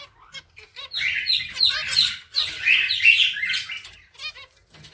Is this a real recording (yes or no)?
yes